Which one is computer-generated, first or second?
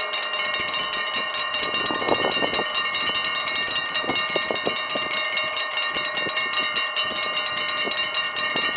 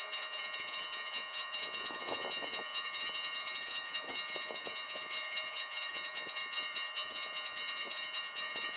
second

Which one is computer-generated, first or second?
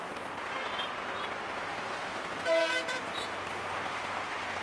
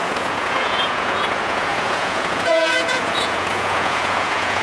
second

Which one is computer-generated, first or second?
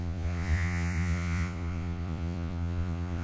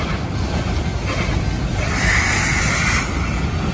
first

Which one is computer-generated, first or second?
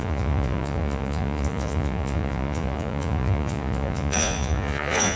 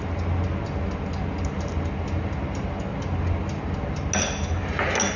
first